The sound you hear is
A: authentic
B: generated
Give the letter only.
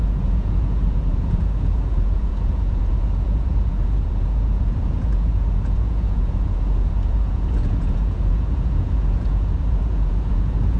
B